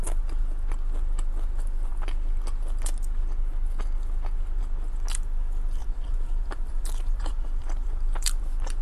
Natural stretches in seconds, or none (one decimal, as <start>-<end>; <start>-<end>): 0.0-5.8; 8.4-8.8